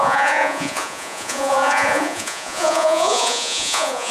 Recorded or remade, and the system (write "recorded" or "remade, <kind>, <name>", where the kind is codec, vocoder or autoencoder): remade, vocoder, Vocos